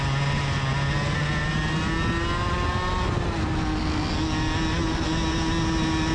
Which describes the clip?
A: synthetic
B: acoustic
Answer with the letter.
B